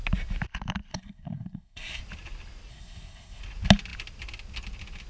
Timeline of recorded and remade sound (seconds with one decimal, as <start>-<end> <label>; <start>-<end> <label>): 0.0-0.9 recorded; 0.9-2.0 remade; 2.0-2.7 recorded; 2.7-3.4 remade; 3.4-5.1 recorded